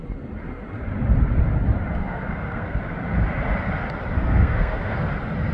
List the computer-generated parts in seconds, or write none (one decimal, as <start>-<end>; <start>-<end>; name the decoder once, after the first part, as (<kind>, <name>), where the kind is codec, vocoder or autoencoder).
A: 2.0-2.8 (codec, SNAC); 4.1-5.0